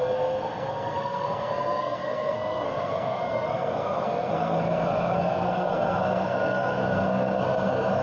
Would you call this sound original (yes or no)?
no